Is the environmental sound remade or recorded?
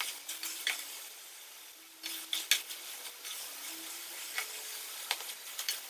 recorded